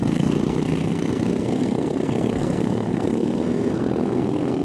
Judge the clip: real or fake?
fake